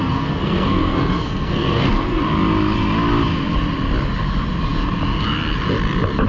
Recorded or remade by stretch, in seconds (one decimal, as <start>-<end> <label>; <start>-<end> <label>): 0.0-2.2 remade; 2.2-6.3 recorded